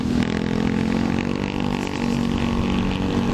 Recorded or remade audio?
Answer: recorded